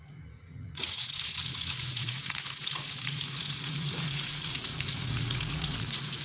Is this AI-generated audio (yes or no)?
yes